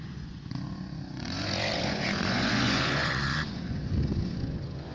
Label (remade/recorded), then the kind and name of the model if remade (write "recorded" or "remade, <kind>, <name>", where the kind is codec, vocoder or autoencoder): remade, vocoder, Vocos